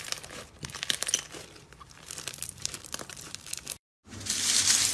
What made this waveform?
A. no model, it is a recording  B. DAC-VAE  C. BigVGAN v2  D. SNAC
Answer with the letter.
C